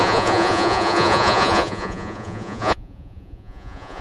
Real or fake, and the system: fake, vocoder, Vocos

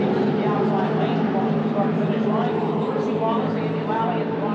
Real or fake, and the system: real